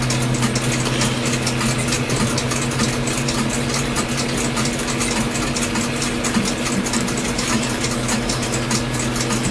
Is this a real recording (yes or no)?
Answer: yes